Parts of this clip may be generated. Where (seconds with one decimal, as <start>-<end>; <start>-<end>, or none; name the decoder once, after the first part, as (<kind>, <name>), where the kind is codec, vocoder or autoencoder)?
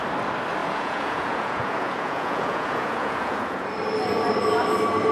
0.6-3.7 (vocoder, Vocos)